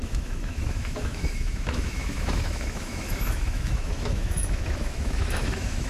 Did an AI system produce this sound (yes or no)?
yes